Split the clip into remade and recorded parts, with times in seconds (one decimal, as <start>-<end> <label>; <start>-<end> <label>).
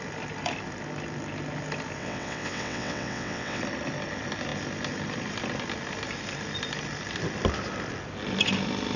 0.0-2.0 recorded; 2.0-3.6 remade; 3.6-9.0 recorded